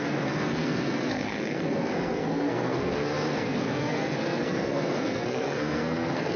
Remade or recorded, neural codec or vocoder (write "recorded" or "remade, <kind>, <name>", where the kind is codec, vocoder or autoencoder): remade, codec, SNAC